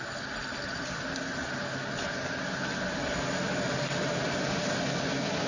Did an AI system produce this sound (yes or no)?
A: no